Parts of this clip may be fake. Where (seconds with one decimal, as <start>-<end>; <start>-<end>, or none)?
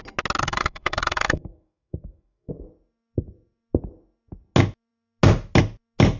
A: 0.4-2.5